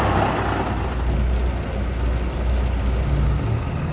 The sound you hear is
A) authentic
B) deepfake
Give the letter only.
A